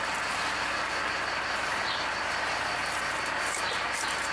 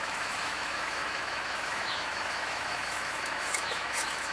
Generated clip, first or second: second